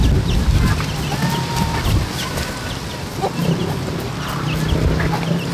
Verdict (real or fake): real